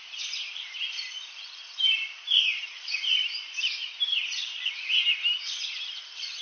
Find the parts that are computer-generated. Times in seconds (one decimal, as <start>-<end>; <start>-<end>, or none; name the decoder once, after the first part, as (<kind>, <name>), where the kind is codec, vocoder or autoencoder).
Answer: 0.0-6.4 (vocoder, BigVGAN v2)